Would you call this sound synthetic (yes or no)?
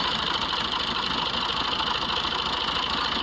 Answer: no